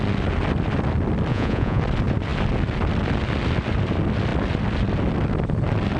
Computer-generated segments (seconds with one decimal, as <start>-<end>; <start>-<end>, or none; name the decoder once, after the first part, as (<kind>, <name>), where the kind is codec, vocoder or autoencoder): 1.3-1.8 (vocoder, Vocos)